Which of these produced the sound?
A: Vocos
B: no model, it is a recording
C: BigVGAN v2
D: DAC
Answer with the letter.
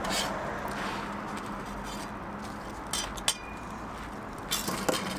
B